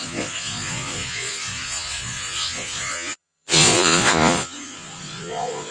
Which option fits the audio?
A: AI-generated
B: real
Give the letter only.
A